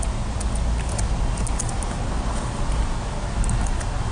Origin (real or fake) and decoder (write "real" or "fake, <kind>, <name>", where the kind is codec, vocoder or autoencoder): real